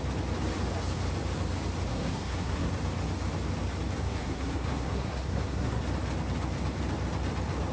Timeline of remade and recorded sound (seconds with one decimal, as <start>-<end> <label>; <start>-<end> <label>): 0.0-1.9 recorded; 1.9-2.7 remade; 2.7-4.0 recorded; 4.0-5.8 remade; 5.8-7.7 recorded